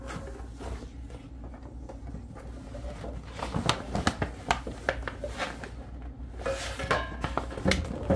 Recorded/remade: recorded